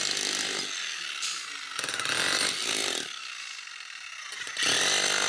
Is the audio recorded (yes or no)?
yes